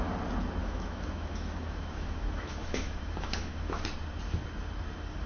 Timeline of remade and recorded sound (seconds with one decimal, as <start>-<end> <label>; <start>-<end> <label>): 0.0-0.6 recorded; 0.6-3.8 remade; 3.8-5.3 recorded